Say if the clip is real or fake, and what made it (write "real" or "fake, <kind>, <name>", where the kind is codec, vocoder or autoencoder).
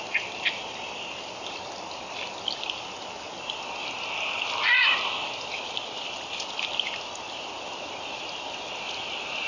real